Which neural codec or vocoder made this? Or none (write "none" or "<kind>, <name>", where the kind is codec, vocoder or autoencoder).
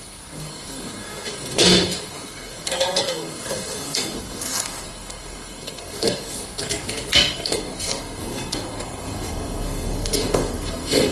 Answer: codec, SNAC